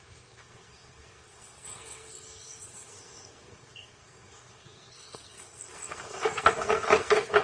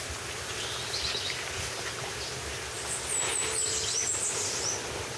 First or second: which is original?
second